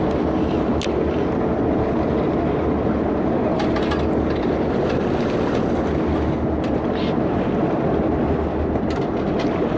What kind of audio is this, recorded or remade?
recorded